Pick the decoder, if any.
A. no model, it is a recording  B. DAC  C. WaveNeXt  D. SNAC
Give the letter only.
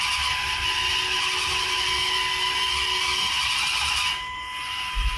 A